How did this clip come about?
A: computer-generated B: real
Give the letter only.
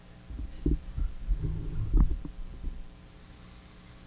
B